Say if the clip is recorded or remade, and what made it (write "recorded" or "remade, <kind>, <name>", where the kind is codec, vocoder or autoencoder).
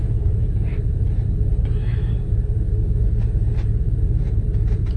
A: remade, vocoder, BigVGAN v2